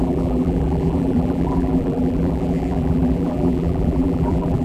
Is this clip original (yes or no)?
no